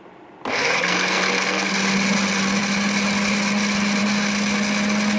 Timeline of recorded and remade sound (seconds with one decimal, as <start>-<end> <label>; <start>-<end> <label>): 0.0-0.5 recorded; 0.5-1.7 remade; 1.7-5.2 recorded